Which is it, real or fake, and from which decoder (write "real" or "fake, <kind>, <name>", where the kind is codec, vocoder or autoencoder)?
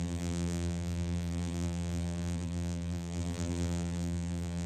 fake, vocoder, BigVGAN v2